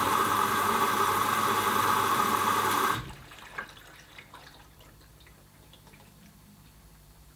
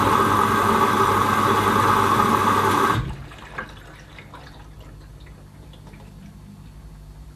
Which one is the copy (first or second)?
first